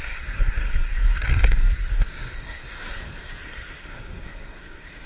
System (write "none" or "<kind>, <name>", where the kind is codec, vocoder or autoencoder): codec, SNAC